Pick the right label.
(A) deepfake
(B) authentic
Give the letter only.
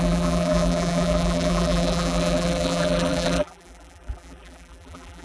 A